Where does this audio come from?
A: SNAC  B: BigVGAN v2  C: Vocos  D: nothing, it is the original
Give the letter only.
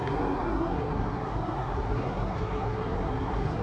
A